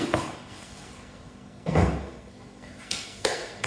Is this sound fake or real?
fake